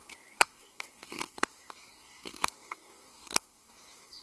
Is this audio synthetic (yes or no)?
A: yes